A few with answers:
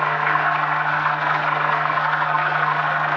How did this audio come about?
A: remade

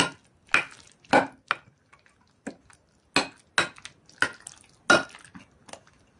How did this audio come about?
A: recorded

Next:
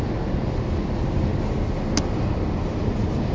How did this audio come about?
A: recorded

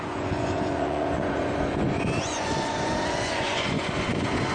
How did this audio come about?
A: remade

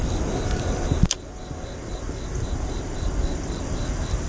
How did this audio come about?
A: recorded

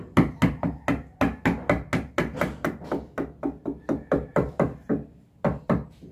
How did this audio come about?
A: recorded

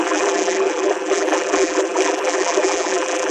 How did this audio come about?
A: remade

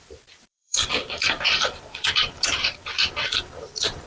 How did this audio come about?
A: remade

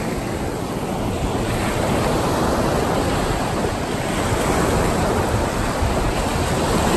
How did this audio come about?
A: recorded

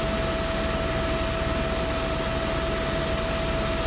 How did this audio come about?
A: recorded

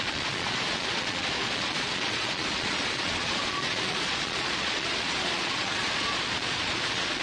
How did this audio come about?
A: remade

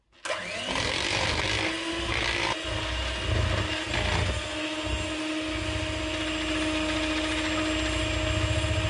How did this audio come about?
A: recorded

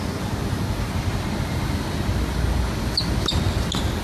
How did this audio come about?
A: recorded